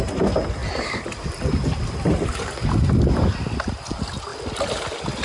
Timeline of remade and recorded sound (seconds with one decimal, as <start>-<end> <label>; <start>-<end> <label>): 0.0-0.6 recorded; 0.6-2.3 remade; 2.3-5.2 recorded

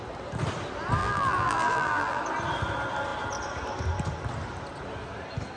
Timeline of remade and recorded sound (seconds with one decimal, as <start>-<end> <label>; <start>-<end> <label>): 0.0-1.0 recorded; 1.0-2.2 remade; 2.2-5.6 recorded

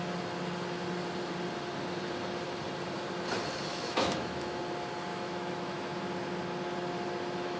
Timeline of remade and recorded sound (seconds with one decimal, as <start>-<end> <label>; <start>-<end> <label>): 0.0-3.7 recorded; 3.7-4.6 remade; 4.6-5.1 recorded; 5.1-6.0 remade; 6.0-7.6 recorded

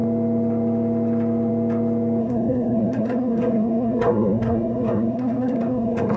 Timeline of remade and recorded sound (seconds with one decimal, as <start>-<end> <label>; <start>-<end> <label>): 0.0-2.2 recorded; 2.2-6.2 remade

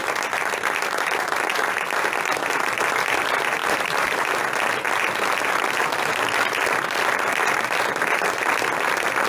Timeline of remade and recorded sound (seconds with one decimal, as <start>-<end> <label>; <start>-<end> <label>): 0.0-3.6 recorded; 3.6-4.4 remade; 4.4-9.3 recorded

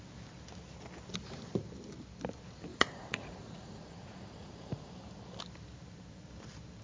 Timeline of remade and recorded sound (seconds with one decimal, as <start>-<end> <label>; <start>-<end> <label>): 0.0-2.7 recorded; 2.7-4.9 remade; 4.9-6.8 recorded

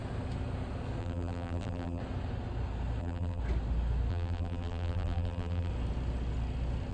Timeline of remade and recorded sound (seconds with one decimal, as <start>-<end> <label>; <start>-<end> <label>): 0.0-1.0 recorded; 1.0-2.0 remade; 2.0-3.0 recorded; 3.0-3.4 remade; 3.4-4.1 recorded; 4.1-5.7 remade; 5.7-6.9 recorded